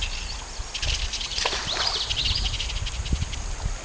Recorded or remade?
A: recorded